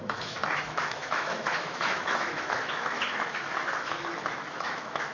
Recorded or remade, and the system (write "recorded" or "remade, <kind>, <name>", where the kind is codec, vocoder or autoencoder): remade, autoencoder, DAC-VAE